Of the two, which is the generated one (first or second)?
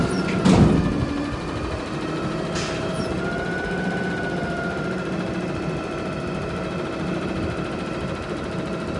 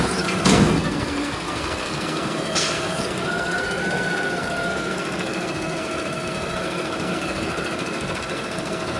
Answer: second